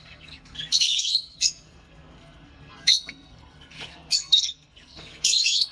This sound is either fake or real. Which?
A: fake